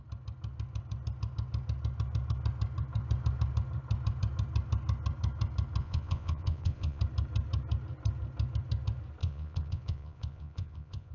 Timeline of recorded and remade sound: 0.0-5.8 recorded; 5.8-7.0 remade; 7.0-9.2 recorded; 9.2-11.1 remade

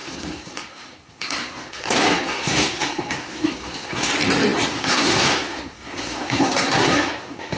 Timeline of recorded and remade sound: 0.0-4.1 remade; 4.1-4.7 recorded; 4.7-7.6 remade

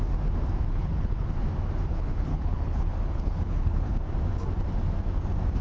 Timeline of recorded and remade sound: 0.0-0.7 recorded; 0.7-1.3 remade; 1.3-1.9 recorded; 1.9-4.0 remade; 4.0-5.6 recorded

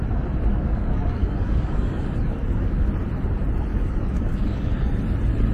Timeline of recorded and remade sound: 0.0-0.5 recorded; 0.5-2.9 remade; 2.9-3.7 recorded; 3.7-4.9 remade; 4.9-5.5 recorded

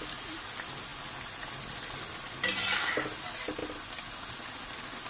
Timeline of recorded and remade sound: 0.0-5.1 recorded

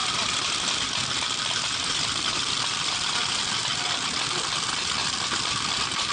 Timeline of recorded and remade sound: 0.0-3.1 remade; 3.1-5.0 recorded; 5.0-6.1 remade

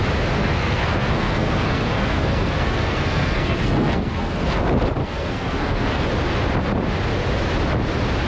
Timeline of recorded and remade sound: 0.0-0.4 recorded; 0.4-4.6 remade; 4.6-5.0 recorded; 5.0-6.0 remade; 6.0-8.3 recorded

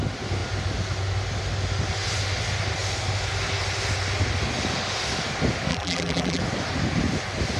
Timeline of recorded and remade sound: 0.0-5.7 recorded; 5.7-6.4 remade; 6.4-7.6 recorded